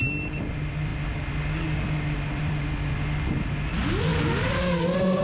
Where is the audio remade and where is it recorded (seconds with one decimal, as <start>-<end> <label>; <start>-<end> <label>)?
0.0-5.2 recorded